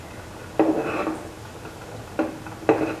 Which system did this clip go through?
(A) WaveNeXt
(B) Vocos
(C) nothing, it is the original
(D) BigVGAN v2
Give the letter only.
C